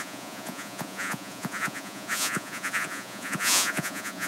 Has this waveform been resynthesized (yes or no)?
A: yes